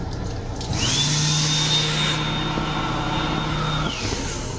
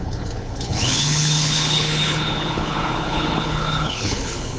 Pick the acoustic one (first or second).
first